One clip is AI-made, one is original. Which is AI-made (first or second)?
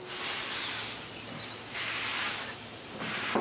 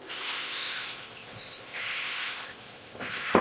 second